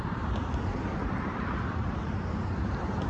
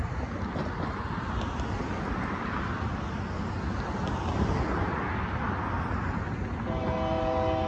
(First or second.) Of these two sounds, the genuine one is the second